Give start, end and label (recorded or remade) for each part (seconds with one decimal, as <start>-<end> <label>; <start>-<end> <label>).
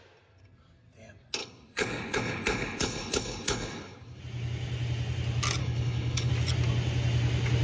0.0-1.4 recorded; 1.4-4.2 remade; 4.2-5.6 recorded; 5.6-6.3 remade; 6.3-7.6 recorded